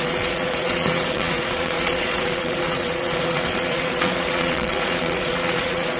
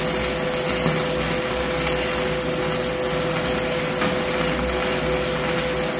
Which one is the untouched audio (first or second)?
second